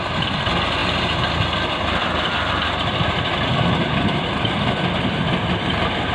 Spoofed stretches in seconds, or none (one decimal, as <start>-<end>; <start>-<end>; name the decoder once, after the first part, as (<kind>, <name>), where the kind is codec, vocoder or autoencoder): none